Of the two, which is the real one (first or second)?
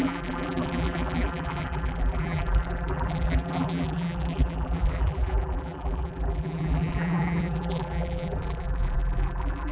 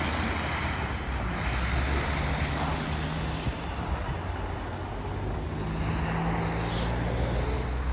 second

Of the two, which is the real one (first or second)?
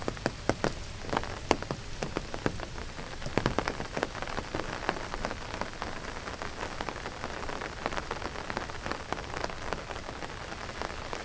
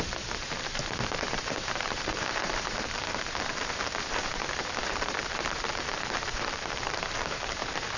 first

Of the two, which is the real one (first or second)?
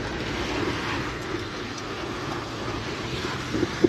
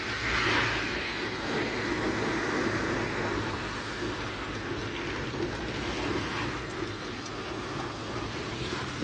second